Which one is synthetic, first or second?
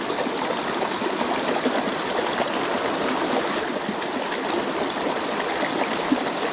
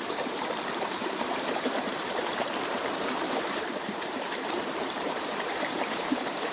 second